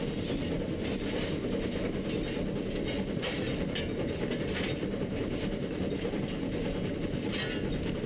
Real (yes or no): yes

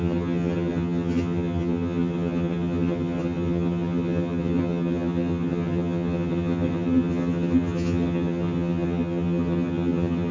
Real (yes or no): no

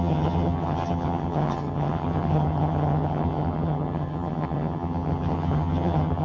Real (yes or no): no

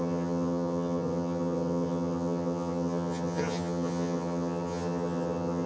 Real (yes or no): no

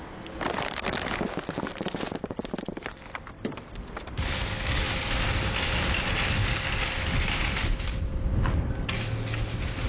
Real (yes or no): yes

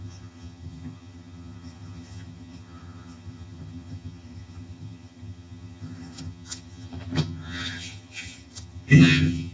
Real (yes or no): no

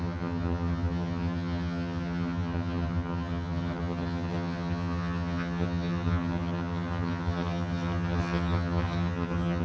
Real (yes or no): no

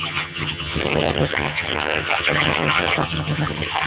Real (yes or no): no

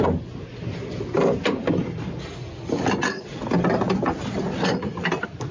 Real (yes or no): yes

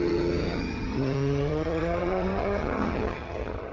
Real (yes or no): no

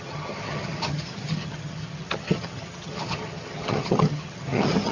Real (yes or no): no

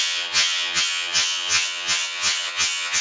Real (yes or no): no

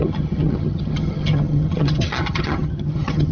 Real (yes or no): no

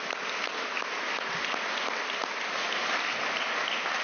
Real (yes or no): yes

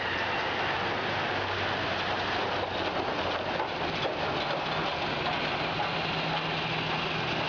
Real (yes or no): yes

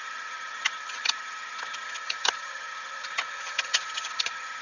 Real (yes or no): no